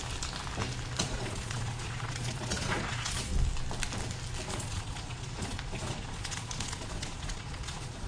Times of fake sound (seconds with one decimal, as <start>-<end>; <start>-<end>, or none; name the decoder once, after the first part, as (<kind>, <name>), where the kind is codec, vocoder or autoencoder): 1.0-3.3 (vocoder, Vocos); 4.5-8.1